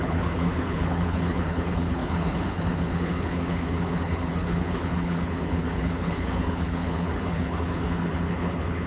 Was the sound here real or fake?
fake